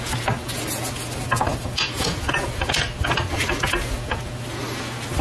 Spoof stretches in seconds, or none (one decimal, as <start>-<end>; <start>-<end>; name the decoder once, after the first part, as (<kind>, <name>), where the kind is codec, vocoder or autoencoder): none

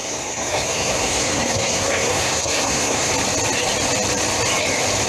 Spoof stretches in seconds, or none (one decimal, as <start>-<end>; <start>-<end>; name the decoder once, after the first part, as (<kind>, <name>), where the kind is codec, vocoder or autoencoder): 0.0-3.1 (codec, SNAC)

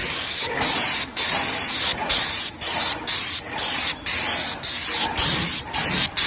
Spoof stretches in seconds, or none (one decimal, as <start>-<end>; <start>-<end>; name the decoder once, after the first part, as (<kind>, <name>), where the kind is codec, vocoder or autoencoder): none

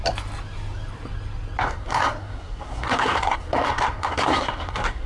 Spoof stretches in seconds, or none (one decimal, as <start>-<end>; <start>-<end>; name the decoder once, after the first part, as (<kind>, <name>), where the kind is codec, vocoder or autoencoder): 1.6-5.1 (codec, SNAC)